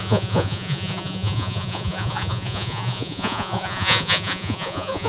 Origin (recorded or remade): remade